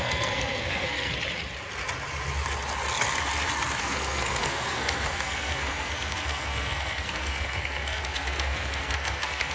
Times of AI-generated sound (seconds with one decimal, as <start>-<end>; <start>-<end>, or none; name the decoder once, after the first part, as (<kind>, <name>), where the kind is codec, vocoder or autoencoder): 0.0-1.1 (codec, SNAC); 3.8-9.5